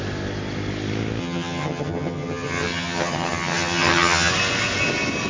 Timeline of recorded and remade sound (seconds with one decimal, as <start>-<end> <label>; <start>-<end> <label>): 0.0-1.2 recorded; 1.2-4.3 remade; 4.3-5.3 recorded

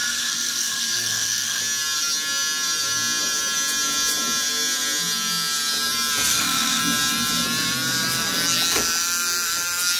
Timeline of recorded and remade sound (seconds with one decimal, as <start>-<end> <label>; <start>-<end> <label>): 0.0-1.6 remade; 1.6-6.3 recorded; 6.3-6.8 remade; 6.8-10.0 recorded

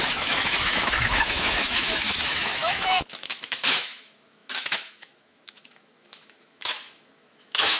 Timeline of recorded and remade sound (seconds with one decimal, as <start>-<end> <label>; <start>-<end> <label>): 0.0-7.8 remade

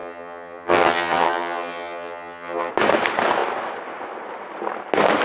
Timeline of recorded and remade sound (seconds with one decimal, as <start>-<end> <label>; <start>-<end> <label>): 0.0-2.7 remade; 2.7-5.2 recorded

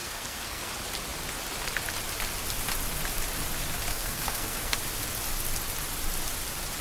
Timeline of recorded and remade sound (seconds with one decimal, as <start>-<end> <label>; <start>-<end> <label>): 0.0-0.7 remade; 0.7-3.9 recorded; 3.9-4.8 remade; 4.8-6.8 recorded